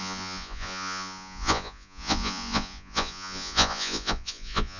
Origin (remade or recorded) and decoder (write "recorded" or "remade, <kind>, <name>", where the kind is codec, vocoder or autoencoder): remade, vocoder, Vocos